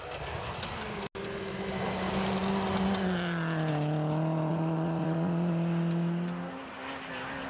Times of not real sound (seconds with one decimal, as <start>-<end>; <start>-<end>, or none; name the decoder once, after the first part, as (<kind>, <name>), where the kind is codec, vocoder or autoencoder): 4.5-5.5 (vocoder, Vocos)